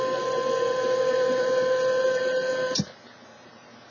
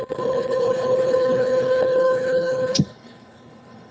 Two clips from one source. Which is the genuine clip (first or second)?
first